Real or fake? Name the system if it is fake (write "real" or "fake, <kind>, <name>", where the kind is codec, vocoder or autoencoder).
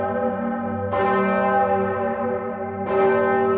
real